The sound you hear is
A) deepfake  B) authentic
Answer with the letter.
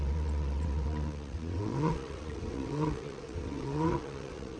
A